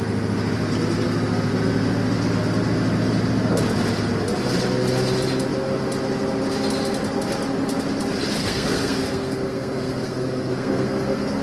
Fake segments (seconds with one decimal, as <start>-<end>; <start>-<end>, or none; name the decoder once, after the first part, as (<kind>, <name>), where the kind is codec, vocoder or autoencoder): 8.4-11.4 (codec, SNAC)